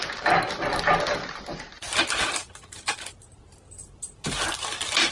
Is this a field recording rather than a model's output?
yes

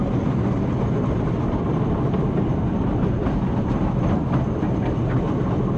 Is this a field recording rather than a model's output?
yes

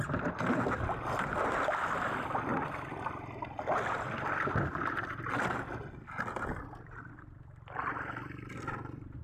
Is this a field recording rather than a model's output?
yes